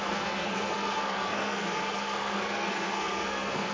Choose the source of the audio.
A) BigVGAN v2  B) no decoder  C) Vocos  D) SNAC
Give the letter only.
D